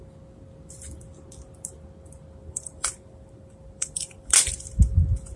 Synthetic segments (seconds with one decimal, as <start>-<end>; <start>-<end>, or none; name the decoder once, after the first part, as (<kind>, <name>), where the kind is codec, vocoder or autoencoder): 2.4-4.3 (vocoder, BigVGAN v2)